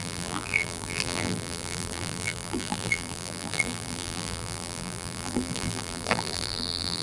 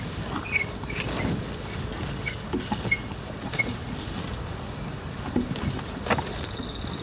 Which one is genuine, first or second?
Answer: second